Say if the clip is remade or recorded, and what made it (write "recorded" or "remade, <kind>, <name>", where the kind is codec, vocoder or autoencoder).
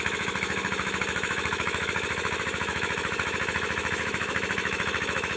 remade, autoencoder, DAC-VAE